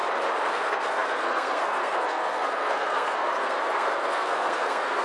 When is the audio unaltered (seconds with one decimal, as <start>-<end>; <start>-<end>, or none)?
0.0-0.5